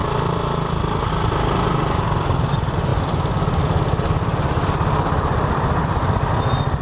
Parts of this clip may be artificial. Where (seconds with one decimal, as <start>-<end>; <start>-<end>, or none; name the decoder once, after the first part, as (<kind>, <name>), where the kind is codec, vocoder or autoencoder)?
2.9-6.3 (vocoder, BigVGAN v2)